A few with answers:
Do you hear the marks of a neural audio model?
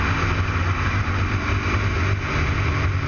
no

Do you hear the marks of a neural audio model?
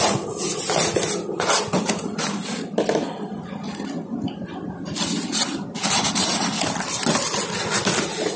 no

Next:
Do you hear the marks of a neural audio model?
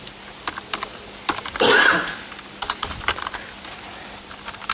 no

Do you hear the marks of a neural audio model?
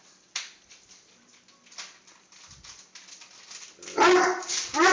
no